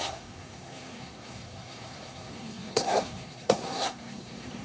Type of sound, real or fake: fake